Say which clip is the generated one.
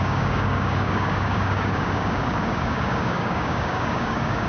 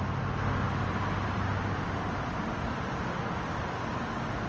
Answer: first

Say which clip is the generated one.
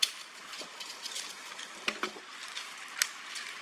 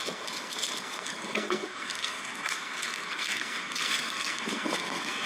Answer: second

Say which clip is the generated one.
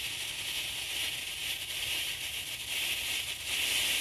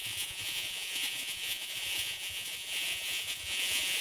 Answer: second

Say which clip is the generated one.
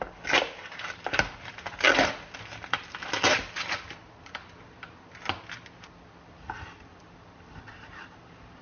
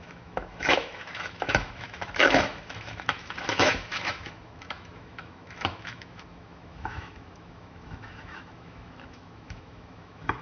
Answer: second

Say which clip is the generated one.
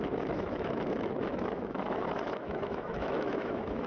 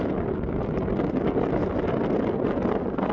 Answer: first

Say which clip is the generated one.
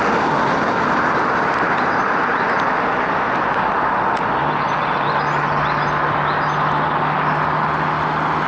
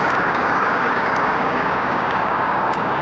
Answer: second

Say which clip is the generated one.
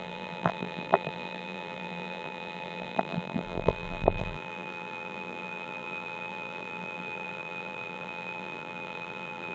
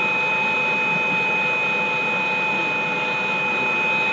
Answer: first